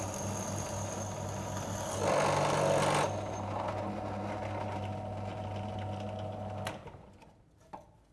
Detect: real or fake real